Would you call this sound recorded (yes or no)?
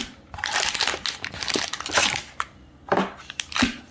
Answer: yes